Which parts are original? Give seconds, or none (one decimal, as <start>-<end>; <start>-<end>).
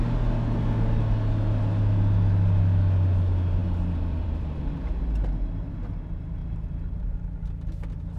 0.0-3.6; 4.6-8.2